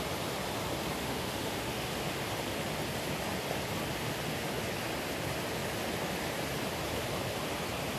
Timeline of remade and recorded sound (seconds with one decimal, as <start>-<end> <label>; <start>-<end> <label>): 0.0-1.0 recorded; 1.0-1.9 remade; 1.9-8.0 recorded